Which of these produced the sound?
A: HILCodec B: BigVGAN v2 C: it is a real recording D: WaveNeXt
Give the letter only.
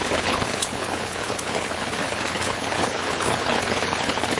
A